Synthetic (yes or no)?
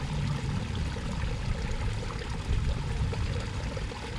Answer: no